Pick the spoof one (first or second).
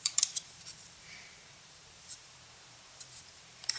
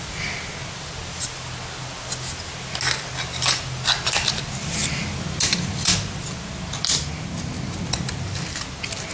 first